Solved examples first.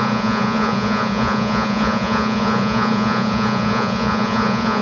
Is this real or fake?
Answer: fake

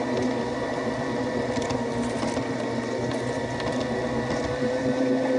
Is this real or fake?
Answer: real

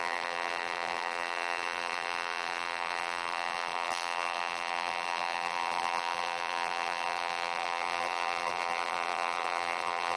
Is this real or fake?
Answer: fake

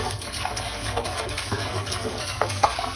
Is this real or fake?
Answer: fake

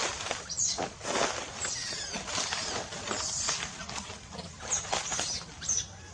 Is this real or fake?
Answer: real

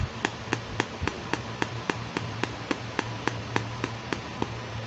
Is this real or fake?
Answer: real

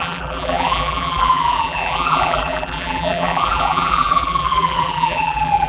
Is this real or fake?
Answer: fake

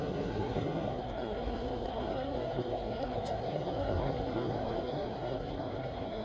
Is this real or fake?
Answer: fake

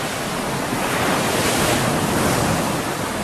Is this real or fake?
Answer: real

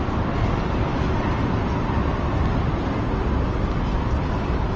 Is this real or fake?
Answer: real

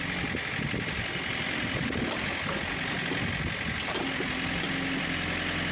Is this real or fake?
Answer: real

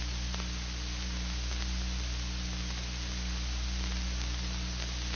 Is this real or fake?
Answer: real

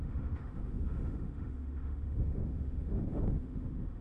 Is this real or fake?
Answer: fake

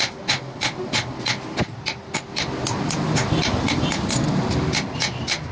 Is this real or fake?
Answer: real